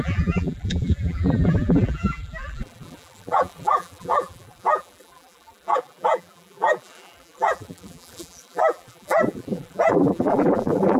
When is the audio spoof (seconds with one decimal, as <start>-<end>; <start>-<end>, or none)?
0.0-11.0